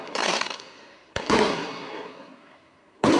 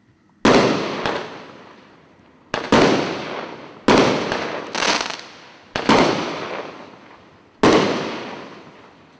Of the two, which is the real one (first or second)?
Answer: second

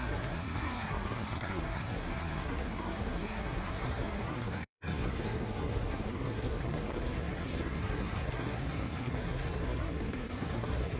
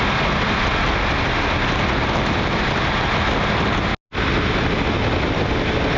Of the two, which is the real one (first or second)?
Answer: second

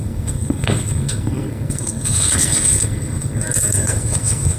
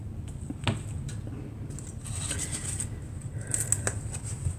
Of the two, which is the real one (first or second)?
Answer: second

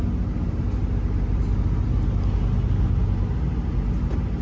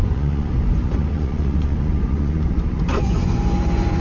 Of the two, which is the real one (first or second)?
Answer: first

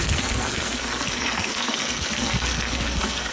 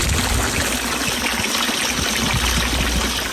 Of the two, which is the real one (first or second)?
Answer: second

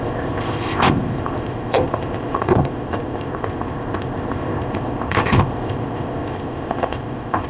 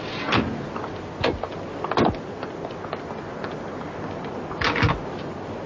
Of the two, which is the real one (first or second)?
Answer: second